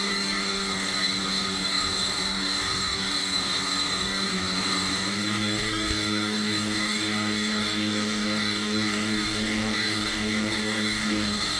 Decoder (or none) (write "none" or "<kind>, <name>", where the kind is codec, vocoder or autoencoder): codec, DAC